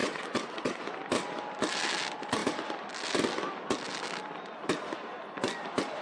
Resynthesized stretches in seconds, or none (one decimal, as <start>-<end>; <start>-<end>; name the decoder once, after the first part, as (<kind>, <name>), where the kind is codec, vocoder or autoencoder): 0.0-0.8 (vocoder, WaveNeXt)

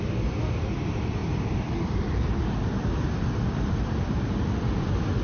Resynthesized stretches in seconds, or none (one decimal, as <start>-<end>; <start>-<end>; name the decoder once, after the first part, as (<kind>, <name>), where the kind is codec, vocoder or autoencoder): none

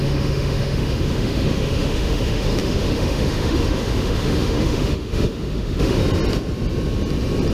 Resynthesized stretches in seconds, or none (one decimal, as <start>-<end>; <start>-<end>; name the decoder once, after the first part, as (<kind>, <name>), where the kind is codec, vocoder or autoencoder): 0.0-6.0 (autoencoder, DAC-VAE)